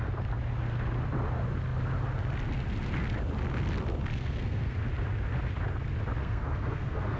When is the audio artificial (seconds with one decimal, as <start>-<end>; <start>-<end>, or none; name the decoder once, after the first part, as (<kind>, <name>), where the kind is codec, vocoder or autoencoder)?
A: 4.1-4.8 (codec, SNAC); 6.2-7.2